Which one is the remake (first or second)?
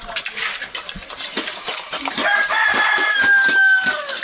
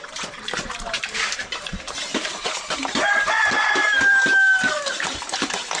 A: second